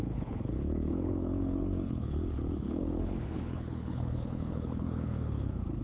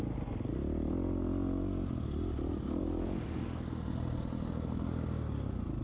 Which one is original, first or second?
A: second